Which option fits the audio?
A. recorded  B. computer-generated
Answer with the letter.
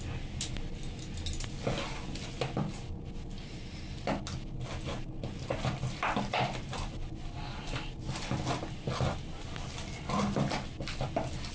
A